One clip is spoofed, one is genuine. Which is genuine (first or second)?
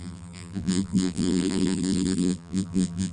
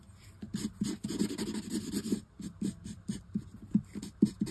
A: second